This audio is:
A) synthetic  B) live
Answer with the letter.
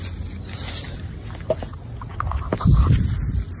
B